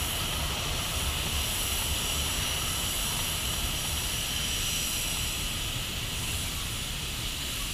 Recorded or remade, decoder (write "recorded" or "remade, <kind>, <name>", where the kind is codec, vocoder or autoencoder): recorded